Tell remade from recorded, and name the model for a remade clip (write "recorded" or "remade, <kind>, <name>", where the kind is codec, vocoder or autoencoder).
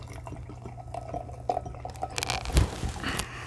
recorded